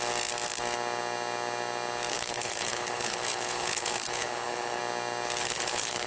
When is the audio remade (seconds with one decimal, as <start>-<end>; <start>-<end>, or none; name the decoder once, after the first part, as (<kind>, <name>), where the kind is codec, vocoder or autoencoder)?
2.1-4.8 (codec, HILCodec); 5.4-6.1